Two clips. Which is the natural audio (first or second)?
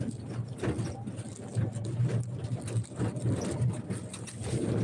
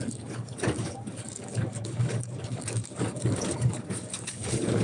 first